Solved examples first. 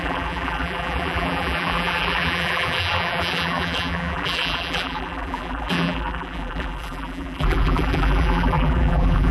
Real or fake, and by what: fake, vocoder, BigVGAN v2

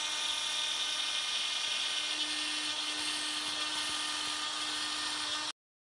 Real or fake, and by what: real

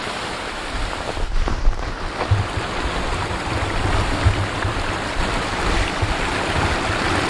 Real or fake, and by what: fake, vocoder, BigVGAN v2